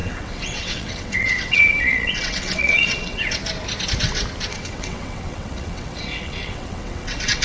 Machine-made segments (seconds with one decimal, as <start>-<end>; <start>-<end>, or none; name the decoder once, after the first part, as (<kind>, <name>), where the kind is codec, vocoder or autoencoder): 0.0-3.4 (vocoder, WaveNeXt); 4.5-7.4